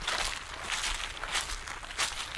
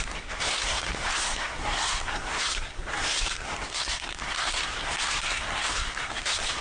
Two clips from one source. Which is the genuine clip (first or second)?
first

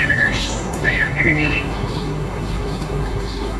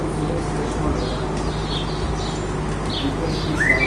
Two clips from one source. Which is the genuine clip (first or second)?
second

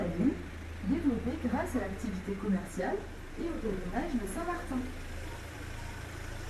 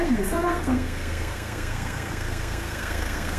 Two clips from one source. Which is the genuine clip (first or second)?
first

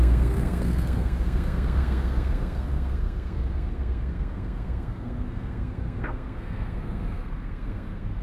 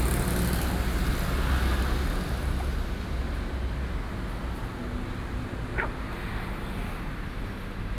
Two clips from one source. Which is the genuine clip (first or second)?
second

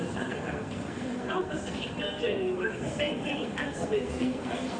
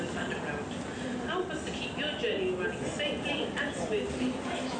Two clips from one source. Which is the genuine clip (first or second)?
second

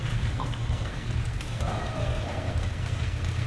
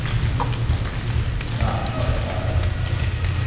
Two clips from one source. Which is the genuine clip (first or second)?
second